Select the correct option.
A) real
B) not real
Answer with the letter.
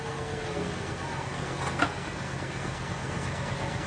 B